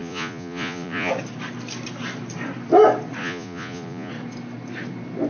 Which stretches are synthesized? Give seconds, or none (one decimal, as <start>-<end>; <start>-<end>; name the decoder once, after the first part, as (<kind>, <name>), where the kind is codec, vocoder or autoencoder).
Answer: 0.0-1.1 (vocoder, Vocos); 3.2-4.1